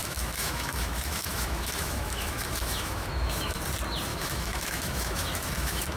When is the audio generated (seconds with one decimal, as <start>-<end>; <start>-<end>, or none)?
0.0-3.6; 4.1-6.0